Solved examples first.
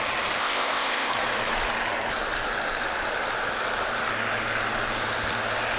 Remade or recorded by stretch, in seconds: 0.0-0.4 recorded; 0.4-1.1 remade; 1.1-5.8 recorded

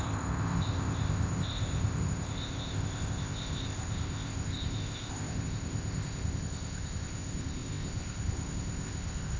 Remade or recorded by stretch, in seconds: 0.0-9.4 remade

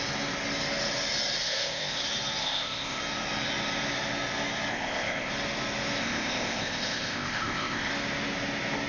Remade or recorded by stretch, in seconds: 0.0-1.4 recorded; 1.4-2.0 remade; 2.0-2.4 recorded; 2.4-3.0 remade; 3.0-4.7 recorded; 4.7-5.3 remade; 5.3-6.0 recorded; 6.0-7.9 remade; 7.9-8.9 recorded